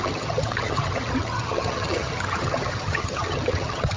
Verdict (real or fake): fake